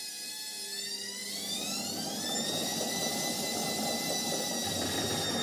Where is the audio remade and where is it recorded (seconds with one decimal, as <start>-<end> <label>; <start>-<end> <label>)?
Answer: 0.0-5.4 recorded